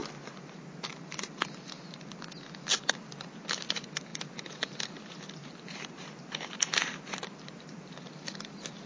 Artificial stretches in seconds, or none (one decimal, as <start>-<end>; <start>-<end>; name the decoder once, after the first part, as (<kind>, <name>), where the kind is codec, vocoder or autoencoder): 5.4-8.3 (vocoder, BigVGAN v2)